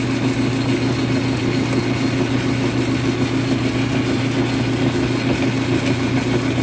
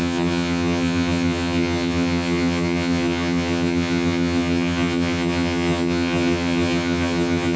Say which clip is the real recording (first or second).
first